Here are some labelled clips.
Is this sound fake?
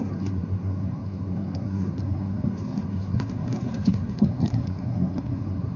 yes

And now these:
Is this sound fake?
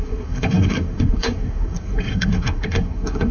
yes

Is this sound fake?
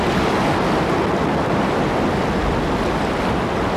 no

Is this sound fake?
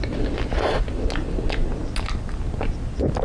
no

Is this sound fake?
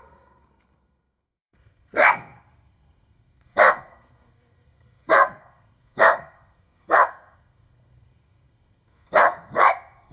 yes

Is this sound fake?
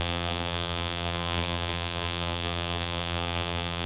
yes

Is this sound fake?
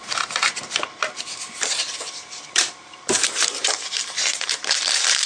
yes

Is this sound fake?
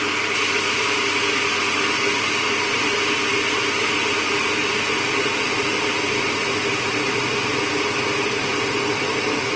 no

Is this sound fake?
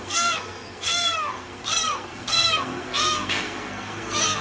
yes